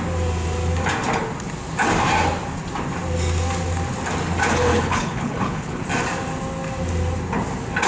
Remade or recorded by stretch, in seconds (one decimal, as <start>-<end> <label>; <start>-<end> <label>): 0.0-4.7 recorded; 4.7-5.8 remade; 5.8-7.9 recorded

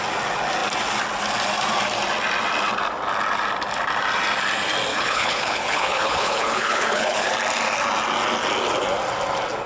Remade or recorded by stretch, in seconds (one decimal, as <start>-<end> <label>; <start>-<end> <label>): 0.0-4.9 recorded; 4.9-7.3 remade; 7.3-9.7 recorded

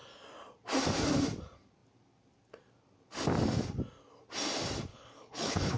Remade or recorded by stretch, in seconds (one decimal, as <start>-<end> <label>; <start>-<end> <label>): 0.0-4.9 recorded; 4.9-5.8 remade